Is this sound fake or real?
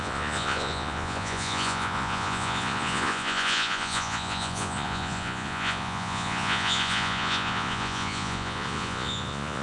fake